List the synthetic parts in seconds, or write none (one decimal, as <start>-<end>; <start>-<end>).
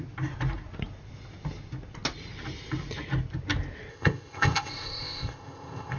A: 3.9-6.0